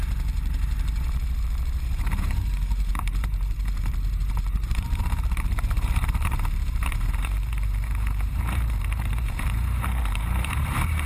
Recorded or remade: remade